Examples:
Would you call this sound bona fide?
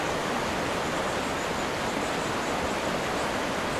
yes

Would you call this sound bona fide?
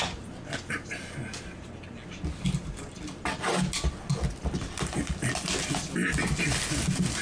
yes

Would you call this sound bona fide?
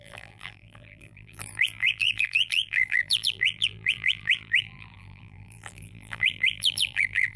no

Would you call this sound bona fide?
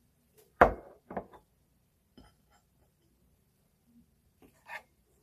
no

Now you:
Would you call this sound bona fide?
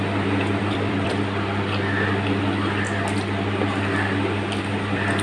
no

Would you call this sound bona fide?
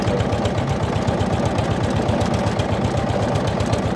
yes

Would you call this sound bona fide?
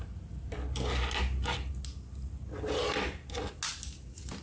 yes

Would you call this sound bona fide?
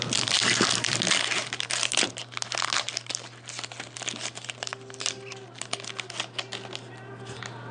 yes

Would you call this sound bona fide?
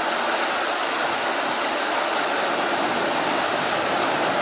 yes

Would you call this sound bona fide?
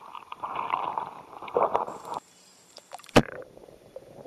no